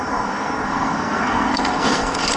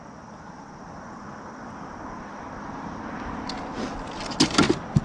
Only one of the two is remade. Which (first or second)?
first